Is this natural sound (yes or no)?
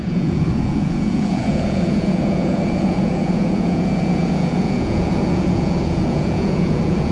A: no